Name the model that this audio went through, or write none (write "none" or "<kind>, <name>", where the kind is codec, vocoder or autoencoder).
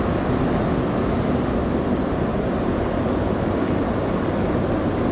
none